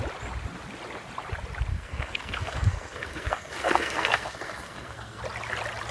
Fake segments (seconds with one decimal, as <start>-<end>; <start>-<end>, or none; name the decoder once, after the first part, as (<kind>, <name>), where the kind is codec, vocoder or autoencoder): 1.7-5.2 (codec, SNAC)